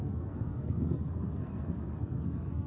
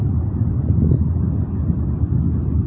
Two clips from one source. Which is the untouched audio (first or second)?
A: second